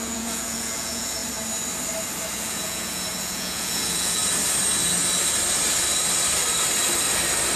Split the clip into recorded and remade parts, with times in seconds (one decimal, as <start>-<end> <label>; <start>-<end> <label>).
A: 0.0-1.2 remade; 1.2-2.3 recorded; 2.3-4.2 remade; 4.2-7.6 recorded